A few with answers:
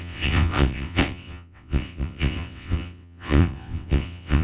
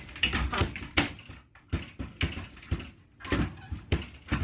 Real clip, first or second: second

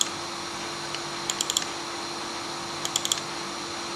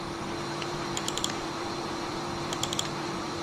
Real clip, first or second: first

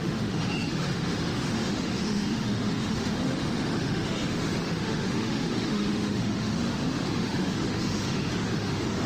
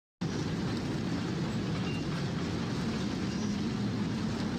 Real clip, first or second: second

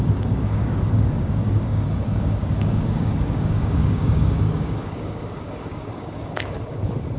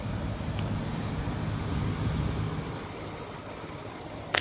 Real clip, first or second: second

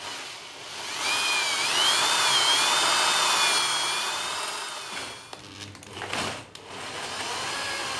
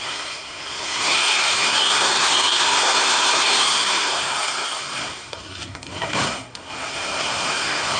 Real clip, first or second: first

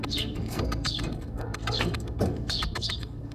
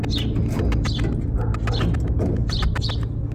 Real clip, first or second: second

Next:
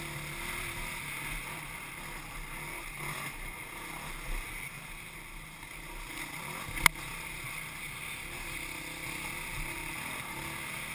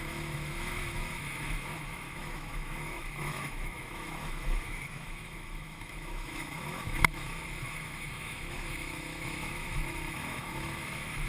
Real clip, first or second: first